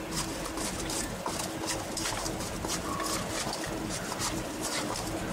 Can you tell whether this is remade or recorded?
recorded